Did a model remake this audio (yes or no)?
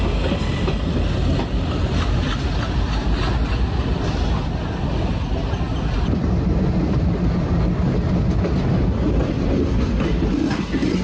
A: no